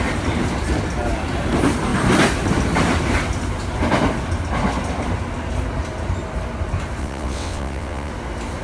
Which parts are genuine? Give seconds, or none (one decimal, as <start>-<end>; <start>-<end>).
0.0-7.0; 8.1-8.6